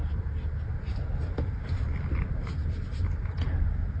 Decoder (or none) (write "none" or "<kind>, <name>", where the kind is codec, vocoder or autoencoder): none